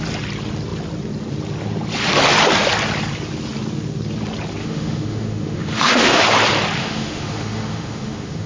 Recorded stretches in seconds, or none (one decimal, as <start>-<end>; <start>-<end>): 0.0-4.6; 6.2-6.8

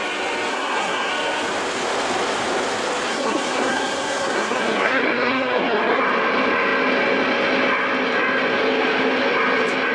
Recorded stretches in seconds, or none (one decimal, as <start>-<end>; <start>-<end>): 0.0-0.5; 1.1-3.1; 6.0-9.9